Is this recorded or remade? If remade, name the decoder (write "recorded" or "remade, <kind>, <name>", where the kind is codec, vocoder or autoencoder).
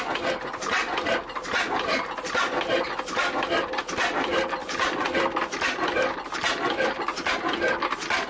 recorded